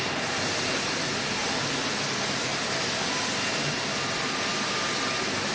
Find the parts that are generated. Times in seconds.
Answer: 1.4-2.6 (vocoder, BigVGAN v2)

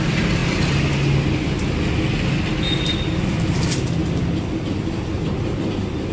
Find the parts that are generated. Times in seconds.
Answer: none

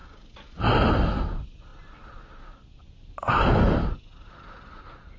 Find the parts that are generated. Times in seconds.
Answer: none

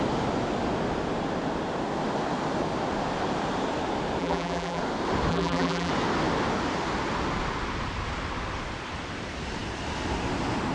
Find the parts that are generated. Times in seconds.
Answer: 4.2-4.8 (vocoder, BigVGAN v2); 5.3-5.9

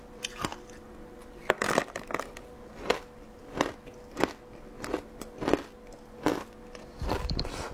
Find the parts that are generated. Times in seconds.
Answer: none

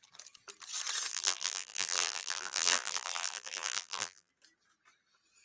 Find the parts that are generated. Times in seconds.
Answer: 1.1-4.3 (vocoder, BigVGAN v2)